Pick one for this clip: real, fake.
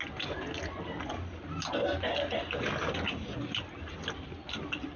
real